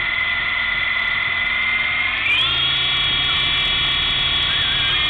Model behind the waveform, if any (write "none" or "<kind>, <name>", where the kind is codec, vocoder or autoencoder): none